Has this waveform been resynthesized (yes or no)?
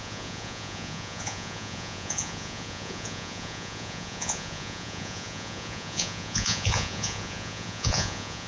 yes